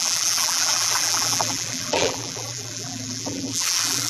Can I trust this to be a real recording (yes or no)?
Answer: no